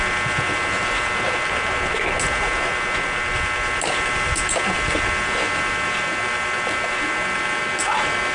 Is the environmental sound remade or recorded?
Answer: recorded